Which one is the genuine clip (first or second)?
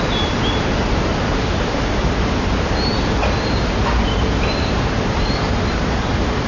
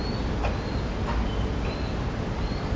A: second